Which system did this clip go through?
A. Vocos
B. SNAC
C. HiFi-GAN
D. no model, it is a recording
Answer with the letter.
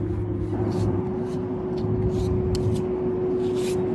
D